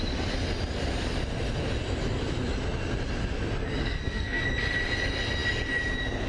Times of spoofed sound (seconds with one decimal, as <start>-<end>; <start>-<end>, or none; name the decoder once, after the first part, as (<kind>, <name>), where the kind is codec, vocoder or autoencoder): 3.8-4.4 (codec, SNAC)